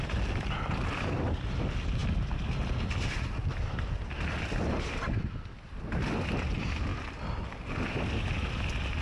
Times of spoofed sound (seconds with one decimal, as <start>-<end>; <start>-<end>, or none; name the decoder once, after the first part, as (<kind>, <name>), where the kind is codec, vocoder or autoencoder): none